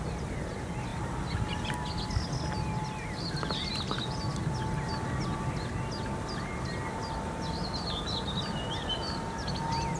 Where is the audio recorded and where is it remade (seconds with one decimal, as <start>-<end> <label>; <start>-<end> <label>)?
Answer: 0.0-10.0 recorded